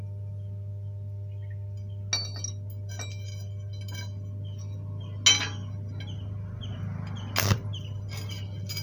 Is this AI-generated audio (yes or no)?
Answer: no